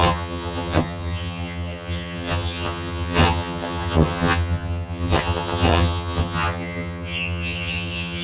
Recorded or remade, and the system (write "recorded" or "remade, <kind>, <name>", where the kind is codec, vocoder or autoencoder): remade, vocoder, HiFi-GAN